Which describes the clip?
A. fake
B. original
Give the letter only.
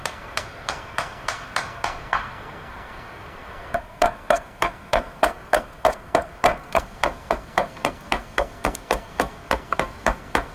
A